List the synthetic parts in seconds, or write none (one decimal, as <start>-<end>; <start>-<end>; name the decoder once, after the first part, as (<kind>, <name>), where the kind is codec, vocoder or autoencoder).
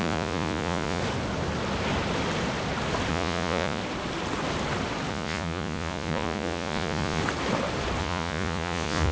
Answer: 0.0-1.0 (vocoder, Vocos); 3.1-3.8; 5.1-7.2; 8.0-9.1